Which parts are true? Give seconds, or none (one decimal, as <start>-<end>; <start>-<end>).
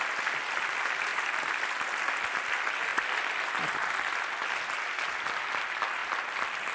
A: 0.0-6.7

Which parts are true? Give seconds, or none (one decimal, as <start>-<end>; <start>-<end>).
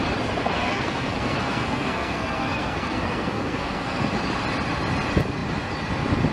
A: 0.0-0.4; 4.2-6.3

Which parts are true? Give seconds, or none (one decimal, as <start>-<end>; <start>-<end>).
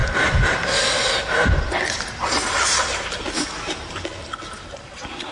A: 0.0-5.3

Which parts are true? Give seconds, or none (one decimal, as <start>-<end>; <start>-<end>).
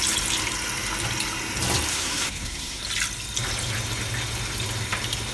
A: 0.0-1.9; 2.8-5.3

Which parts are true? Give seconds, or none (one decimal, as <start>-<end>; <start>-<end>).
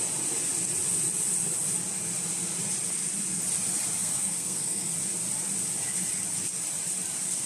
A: 0.0-4.0; 4.9-7.5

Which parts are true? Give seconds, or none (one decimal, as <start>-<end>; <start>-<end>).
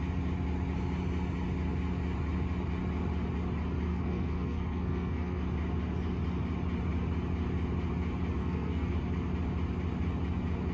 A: 0.0-3.9; 5.4-8.4; 8.9-10.7